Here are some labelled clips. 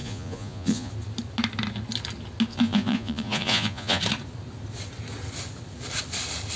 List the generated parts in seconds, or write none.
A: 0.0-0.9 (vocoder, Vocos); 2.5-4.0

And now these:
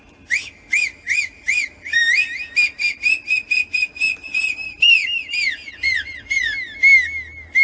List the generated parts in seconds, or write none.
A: none

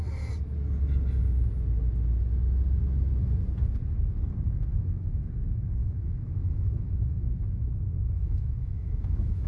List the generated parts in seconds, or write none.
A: 4.7-5.2 (autoencoder, DAC-VAE); 5.8-9.5

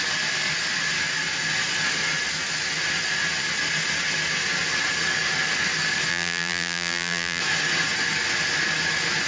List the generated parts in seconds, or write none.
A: 6.1-7.4 (vocoder, BigVGAN v2)

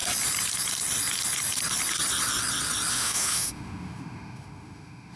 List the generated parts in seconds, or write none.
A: 2.9-5.2 (autoencoder, DAC-VAE)